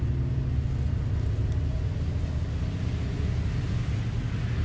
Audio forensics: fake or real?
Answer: real